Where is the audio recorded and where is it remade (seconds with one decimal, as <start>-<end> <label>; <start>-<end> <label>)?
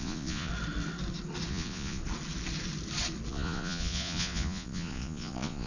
0.0-0.5 remade; 0.5-1.5 recorded; 1.5-2.0 remade; 2.0-3.3 recorded; 3.3-5.7 remade